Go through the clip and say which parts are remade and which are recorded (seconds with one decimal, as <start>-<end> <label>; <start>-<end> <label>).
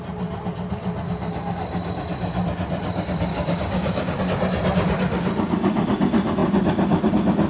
0.0-3.3 recorded; 3.3-4.2 remade; 4.2-7.5 recorded